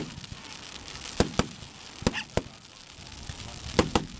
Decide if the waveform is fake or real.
real